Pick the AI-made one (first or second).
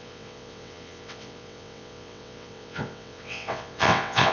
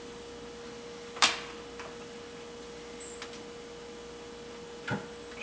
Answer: first